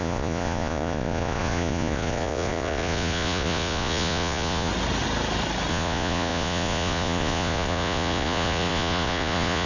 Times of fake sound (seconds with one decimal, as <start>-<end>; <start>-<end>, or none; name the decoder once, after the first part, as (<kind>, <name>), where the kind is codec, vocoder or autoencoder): 0.0-4.7 (vocoder, Vocos); 5.7-9.7